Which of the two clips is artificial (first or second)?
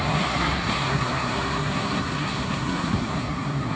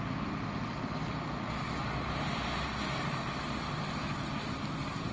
first